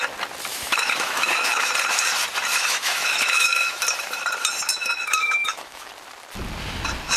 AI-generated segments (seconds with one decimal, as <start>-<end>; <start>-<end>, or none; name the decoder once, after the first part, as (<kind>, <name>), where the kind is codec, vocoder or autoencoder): 0.5-1.7 (autoencoder, DAC-VAE); 2.5-3.8; 4.7-5.9